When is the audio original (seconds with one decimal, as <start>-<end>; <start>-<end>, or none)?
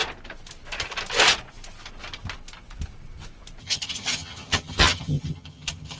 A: 0.0-3.6